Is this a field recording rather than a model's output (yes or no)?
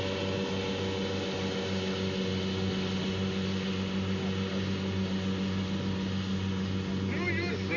yes